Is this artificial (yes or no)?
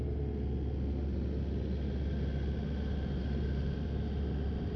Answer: no